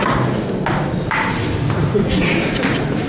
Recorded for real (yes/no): yes